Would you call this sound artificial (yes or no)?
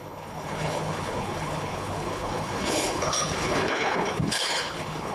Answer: yes